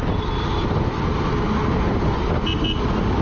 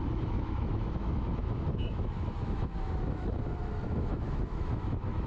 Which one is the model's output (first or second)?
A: second